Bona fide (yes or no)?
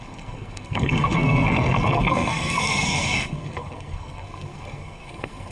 no